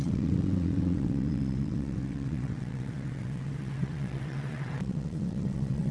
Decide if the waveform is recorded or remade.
remade